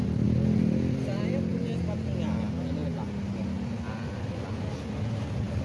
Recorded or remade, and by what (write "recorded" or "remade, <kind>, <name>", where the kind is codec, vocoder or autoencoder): recorded